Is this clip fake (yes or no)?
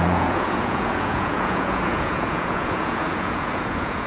yes